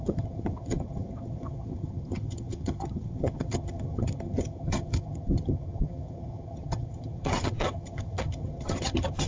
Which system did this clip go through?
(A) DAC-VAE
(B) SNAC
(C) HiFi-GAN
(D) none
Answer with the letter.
C